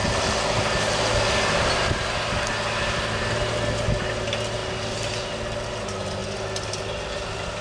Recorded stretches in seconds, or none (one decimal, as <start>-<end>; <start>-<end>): 0.0-7.6